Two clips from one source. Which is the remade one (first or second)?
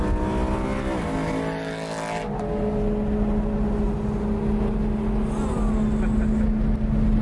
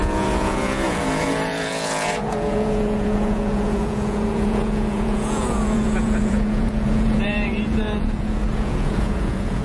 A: second